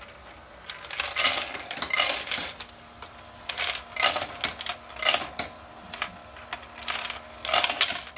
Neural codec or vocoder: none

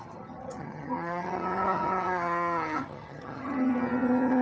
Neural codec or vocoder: vocoder, HiFi-GAN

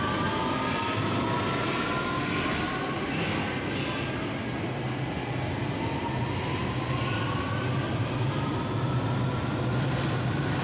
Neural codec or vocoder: none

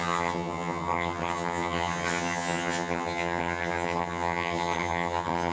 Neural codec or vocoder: vocoder, HiFi-GAN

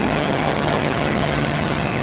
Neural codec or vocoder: vocoder, HiFi-GAN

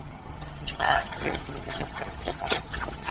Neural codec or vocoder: vocoder, HiFi-GAN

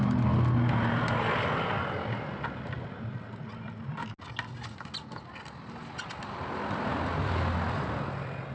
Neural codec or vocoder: none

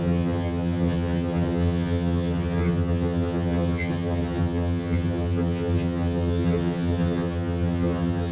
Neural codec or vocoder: vocoder, HiFi-GAN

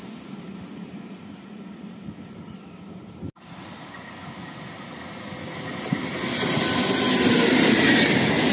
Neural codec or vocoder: none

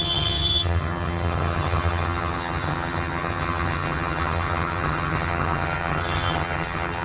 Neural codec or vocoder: vocoder, HiFi-GAN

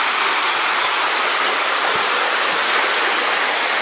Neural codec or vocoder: none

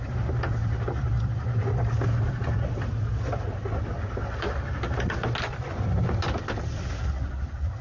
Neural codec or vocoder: none